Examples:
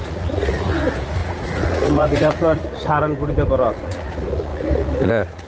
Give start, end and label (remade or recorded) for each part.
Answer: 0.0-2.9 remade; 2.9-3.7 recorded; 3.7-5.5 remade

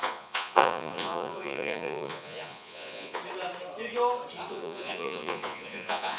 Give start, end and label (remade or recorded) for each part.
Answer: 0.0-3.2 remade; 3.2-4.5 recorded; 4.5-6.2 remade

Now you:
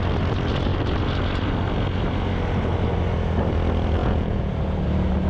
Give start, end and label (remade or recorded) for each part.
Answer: 0.0-4.0 recorded; 4.0-4.5 remade; 4.5-5.3 recorded